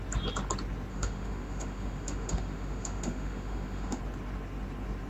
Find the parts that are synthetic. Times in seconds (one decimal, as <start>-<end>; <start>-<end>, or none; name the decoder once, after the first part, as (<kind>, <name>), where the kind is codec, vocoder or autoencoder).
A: 0.9-4.0 (autoencoder, DAC-VAE)